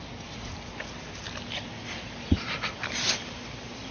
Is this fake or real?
real